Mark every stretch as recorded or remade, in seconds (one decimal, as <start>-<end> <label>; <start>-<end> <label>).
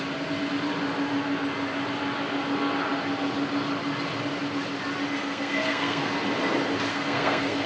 0.0-5.2 recorded; 5.2-6.1 remade; 6.1-6.9 recorded; 6.9-7.7 remade